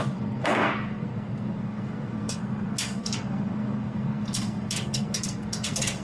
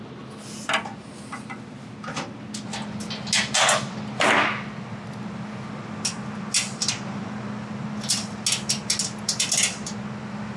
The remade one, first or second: first